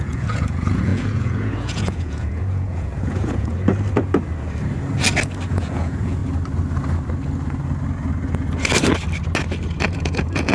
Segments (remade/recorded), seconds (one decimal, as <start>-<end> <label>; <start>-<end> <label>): 0.0-3.5 remade; 3.5-5.5 recorded; 5.5-6.2 remade; 6.2-9.9 recorded; 9.9-10.5 remade